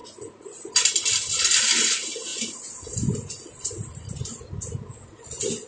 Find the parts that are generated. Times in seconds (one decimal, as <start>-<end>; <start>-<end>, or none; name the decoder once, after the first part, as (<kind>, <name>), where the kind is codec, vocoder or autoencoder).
0.0-0.7 (vocoder, Vocos)